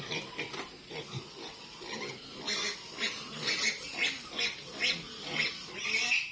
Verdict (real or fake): real